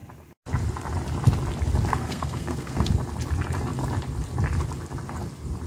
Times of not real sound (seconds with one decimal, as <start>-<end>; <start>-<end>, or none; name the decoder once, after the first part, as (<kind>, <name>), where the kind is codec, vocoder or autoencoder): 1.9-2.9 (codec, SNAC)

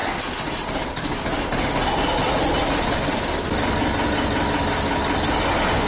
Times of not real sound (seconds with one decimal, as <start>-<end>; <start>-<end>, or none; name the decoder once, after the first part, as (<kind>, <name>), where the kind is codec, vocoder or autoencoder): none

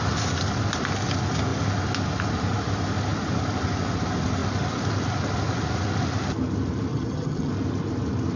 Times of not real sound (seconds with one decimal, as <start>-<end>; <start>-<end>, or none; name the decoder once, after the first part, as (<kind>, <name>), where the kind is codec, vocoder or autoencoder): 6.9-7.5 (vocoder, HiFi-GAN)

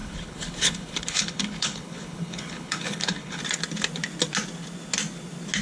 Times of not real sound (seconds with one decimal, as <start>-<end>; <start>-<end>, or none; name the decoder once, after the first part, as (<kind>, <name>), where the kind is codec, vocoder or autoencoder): 0.0-3.4 (codec, HILCodec)